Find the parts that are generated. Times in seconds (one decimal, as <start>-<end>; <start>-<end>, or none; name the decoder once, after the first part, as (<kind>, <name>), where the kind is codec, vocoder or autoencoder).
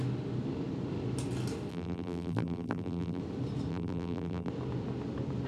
1.7-3.2 (vocoder, BigVGAN v2); 3.7-4.5